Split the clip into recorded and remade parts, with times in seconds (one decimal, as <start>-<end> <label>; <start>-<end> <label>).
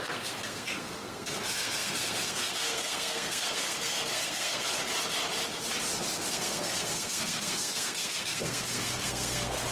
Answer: 0.0-4.8 remade; 4.8-6.3 recorded; 6.3-9.7 remade